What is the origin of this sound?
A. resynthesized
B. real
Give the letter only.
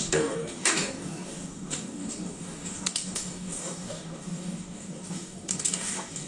A